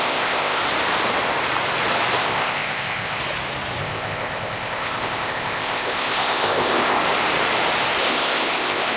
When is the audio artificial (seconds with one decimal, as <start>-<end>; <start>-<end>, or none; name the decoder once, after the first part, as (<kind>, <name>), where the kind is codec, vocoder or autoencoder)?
0.0-0.6 (codec, ZipCodec); 2.2-3.2; 3.8-7.0; 8.0-9.0